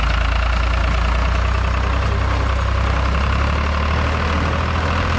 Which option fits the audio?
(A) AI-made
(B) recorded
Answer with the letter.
B